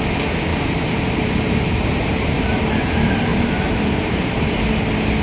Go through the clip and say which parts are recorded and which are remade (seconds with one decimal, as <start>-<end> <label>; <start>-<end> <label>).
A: 0.0-0.5 recorded; 0.5-2.6 remade; 2.6-3.3 recorded; 3.3-4.5 remade; 4.5-5.2 recorded

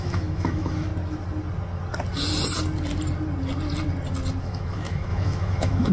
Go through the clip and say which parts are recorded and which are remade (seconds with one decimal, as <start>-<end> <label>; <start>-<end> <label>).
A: 0.0-0.9 remade; 0.9-4.4 recorded; 4.4-5.9 remade

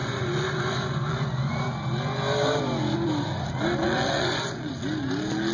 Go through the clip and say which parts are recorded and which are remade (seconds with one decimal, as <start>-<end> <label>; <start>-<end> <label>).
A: 0.0-1.6 remade; 1.6-3.8 recorded; 3.8-4.7 remade; 4.7-5.5 recorded

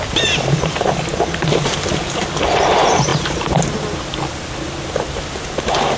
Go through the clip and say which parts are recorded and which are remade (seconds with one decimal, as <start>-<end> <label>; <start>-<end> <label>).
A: 0.0-3.1 recorded; 3.1-4.0 remade; 4.0-6.0 recorded